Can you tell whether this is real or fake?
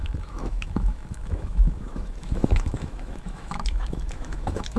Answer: fake